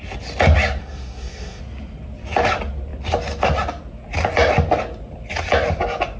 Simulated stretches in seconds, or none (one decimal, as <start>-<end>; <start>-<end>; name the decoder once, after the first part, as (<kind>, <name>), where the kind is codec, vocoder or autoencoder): 0.8-1.6 (codec, SNAC)